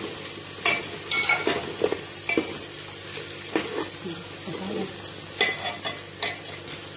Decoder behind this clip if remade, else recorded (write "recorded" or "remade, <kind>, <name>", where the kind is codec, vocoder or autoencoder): recorded